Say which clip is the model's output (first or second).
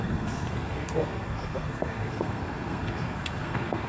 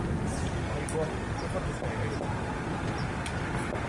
first